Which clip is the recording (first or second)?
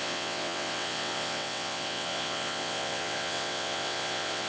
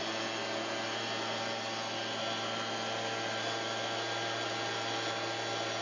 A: second